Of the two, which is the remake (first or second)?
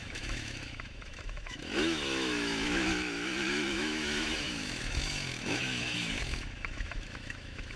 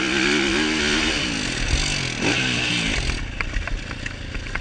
first